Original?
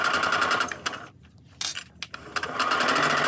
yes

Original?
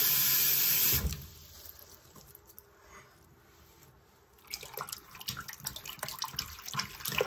yes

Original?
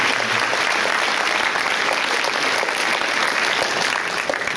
yes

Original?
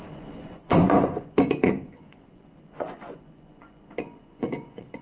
no